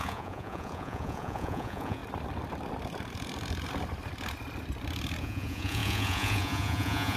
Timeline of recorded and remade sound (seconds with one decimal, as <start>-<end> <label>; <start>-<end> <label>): 0.0-2.0 remade; 2.0-5.2 recorded; 5.2-7.2 remade